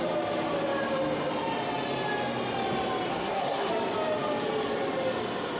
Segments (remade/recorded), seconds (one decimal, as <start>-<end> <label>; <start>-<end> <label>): 0.0-3.1 recorded; 3.1-3.7 remade; 3.7-5.6 recorded